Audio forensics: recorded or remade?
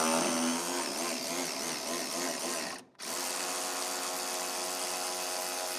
recorded